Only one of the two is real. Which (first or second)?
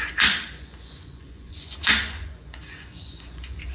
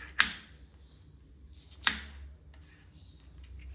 second